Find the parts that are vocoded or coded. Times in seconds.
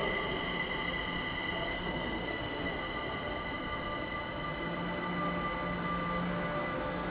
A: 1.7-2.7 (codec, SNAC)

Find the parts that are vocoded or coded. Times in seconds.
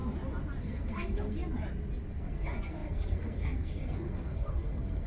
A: 0.6-1.4 (codec, SNAC); 2.1-5.1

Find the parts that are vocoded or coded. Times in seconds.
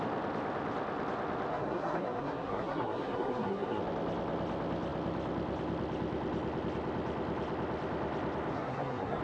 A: 1.5-3.8 (codec, SNAC); 8.5-9.2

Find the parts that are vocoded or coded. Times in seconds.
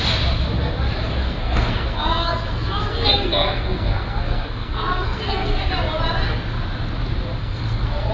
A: 1.2-5.7 (codec, SNAC); 7.4-8.1